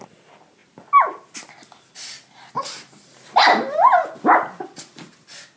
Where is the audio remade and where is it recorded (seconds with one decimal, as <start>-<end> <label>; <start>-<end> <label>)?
0.0-5.6 recorded